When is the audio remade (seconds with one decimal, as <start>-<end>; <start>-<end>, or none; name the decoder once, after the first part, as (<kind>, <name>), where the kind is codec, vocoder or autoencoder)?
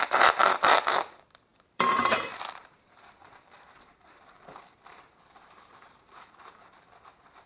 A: 0.0-7.5 (vocoder, BigVGAN v2)